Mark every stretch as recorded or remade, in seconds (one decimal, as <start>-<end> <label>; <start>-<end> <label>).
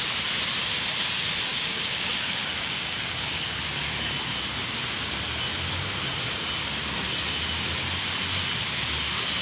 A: 0.0-1.5 recorded; 1.5-3.9 remade; 3.9-9.4 recorded